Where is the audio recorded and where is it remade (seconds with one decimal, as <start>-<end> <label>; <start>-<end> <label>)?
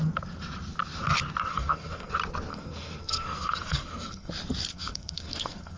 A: 0.0-1.5 recorded; 1.5-2.1 remade; 2.1-2.5 recorded; 2.5-4.3 remade; 4.3-4.7 recorded; 4.7-5.8 remade